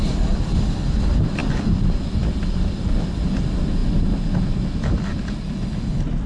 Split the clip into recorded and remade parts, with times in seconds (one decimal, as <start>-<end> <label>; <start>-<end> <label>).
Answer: 0.0-6.3 recorded